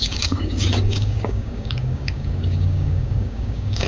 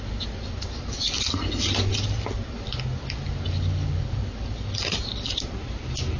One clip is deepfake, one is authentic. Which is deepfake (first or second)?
first